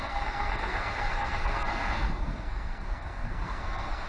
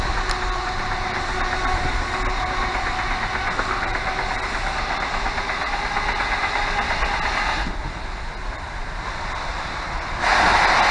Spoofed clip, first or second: first